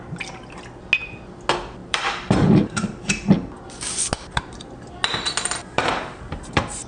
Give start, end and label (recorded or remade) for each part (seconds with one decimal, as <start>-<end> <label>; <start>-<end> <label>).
0.0-1.8 recorded; 1.8-3.0 remade; 3.0-5.6 recorded; 5.6-6.9 remade